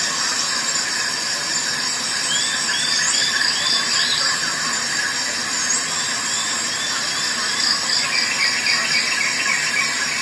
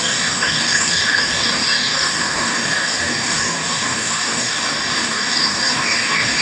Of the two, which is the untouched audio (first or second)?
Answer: first